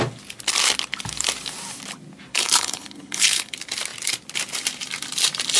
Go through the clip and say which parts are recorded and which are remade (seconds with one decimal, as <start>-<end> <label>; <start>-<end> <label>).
0.0-2.3 recorded; 2.3-3.5 remade; 3.5-5.6 recorded